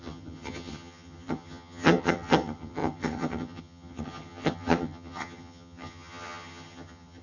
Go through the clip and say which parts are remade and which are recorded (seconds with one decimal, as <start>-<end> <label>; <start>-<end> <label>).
0.0-7.2 remade